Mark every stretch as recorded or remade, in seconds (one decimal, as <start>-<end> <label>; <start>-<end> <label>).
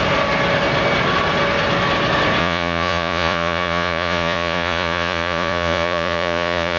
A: 0.0-2.4 recorded; 2.4-6.8 remade